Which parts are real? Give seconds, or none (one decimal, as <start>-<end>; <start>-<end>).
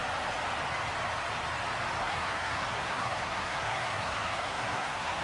0.0-2.0